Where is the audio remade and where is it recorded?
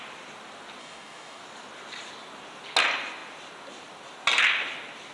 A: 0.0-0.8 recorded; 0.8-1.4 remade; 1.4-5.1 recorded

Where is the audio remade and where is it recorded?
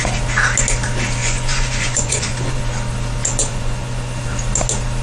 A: 0.0-1.2 recorded; 1.2-2.6 remade; 2.6-3.4 recorded; 3.4-4.2 remade; 4.2-5.0 recorded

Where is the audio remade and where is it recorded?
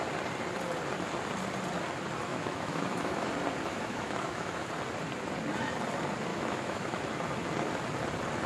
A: 0.0-2.3 recorded; 2.3-3.3 remade; 3.3-3.7 recorded; 3.7-4.7 remade; 4.7-6.3 recorded; 6.3-7.0 remade; 7.0-8.5 recorded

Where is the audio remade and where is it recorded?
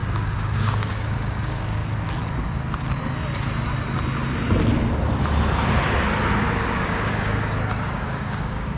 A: 0.0-1.8 remade; 1.8-6.7 recorded; 6.7-8.8 remade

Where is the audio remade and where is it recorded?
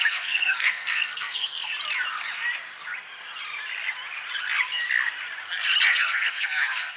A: 0.0-1.7 remade; 1.7-5.9 recorded; 5.9-7.0 remade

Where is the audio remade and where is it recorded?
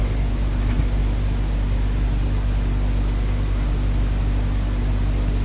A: 0.0-5.4 recorded